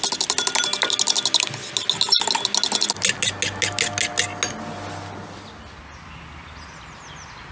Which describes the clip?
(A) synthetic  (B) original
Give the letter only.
B